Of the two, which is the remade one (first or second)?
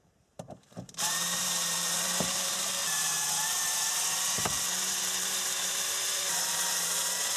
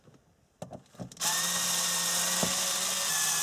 first